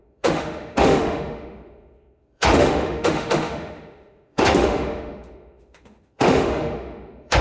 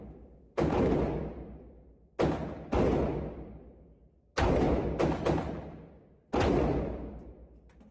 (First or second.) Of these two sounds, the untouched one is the second